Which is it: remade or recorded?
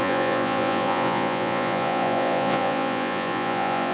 remade